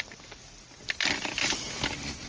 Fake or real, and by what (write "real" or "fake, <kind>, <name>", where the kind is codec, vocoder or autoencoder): real